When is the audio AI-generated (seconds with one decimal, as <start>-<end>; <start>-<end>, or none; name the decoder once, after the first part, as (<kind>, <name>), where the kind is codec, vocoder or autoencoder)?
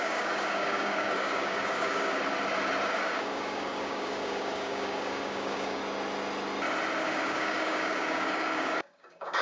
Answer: 0.0-2.2 (codec, DAC); 2.9-5.8; 7.0-9.4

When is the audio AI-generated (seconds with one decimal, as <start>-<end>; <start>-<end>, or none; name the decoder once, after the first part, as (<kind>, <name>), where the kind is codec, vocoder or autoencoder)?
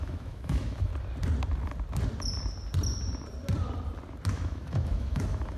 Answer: 0.0-0.9 (autoencoder, DAC-VAE); 4.3-5.6